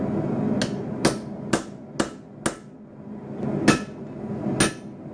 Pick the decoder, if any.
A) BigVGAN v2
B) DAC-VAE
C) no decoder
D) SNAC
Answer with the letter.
C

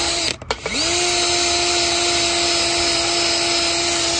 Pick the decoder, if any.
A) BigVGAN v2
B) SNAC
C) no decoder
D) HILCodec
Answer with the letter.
C